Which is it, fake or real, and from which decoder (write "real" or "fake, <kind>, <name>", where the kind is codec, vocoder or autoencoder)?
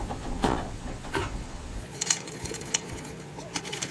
fake, vocoder, Vocos